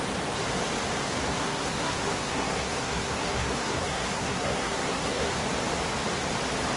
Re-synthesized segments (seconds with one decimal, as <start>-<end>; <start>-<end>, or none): 1.3-5.4